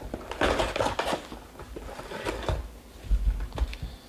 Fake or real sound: fake